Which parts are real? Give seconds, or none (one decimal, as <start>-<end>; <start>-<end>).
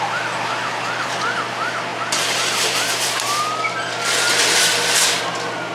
0.0-5.7